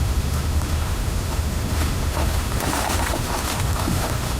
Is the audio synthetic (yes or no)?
yes